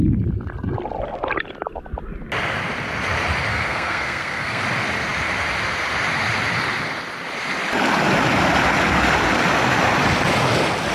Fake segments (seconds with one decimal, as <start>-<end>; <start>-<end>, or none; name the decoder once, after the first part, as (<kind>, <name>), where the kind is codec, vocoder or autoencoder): 3.5-4.6 (codec, SNAC)